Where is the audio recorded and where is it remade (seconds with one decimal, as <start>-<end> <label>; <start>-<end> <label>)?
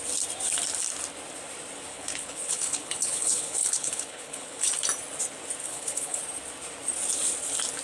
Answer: 0.0-1.9 recorded; 1.9-4.7 remade; 4.7-5.6 recorded; 5.6-6.2 remade; 6.2-7.8 recorded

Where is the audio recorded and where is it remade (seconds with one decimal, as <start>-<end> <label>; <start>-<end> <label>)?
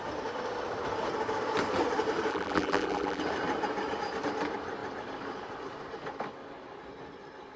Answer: 0.0-2.3 recorded; 2.3-3.2 remade; 3.2-7.6 recorded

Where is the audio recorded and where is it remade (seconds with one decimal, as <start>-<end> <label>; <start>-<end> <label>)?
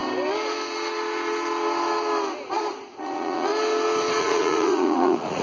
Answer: 0.0-2.3 recorded; 2.3-3.5 remade; 3.5-4.2 recorded; 4.2-5.4 remade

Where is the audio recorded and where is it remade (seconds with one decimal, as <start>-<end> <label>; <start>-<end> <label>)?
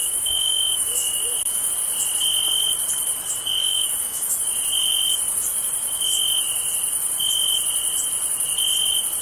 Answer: 0.0-1.7 remade; 1.7-3.6 recorded; 3.6-4.4 remade; 4.4-9.2 recorded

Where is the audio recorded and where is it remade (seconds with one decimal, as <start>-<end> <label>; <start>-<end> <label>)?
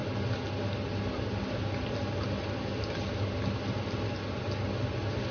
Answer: 0.0-5.3 recorded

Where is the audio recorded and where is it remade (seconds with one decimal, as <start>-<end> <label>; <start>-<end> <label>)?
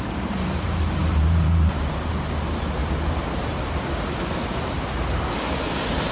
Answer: 0.0-2.8 remade; 2.8-6.1 recorded